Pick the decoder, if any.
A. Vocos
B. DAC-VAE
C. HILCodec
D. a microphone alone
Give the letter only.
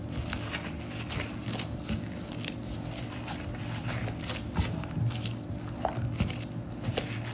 D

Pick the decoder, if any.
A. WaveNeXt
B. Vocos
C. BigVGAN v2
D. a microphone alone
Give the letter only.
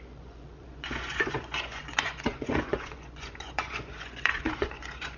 B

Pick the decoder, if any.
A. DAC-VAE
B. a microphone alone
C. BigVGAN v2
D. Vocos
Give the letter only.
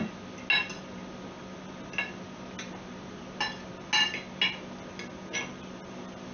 B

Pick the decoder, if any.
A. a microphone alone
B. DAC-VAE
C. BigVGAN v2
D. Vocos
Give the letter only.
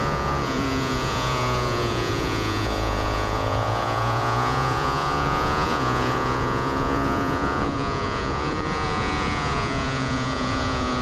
D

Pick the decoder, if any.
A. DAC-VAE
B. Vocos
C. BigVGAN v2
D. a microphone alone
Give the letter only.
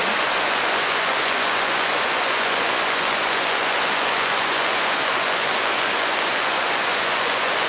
B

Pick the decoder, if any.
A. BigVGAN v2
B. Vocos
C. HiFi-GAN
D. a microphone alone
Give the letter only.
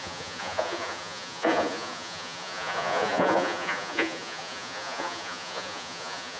B